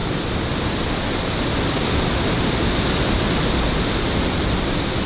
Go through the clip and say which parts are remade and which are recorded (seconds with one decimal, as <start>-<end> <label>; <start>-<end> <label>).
0.0-5.1 recorded